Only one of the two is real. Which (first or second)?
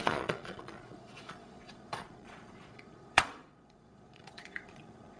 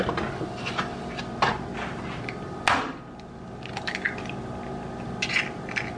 second